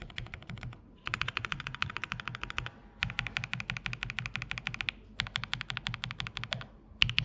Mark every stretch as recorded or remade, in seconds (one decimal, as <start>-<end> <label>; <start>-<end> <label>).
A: 0.0-1.9 remade; 1.9-7.2 recorded